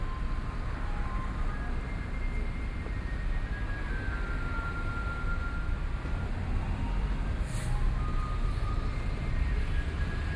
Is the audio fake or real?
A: real